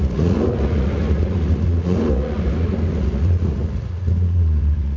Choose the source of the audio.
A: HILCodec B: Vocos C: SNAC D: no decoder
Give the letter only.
B